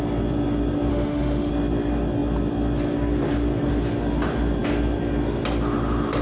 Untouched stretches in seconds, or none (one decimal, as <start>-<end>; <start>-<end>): 0.0-0.9; 1.5-6.2